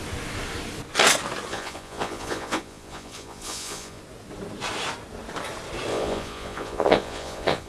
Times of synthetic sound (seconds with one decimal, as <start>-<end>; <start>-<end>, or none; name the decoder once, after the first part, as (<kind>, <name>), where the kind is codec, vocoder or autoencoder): 1.5-4.0 (vocoder, Vocos); 5.9-7.7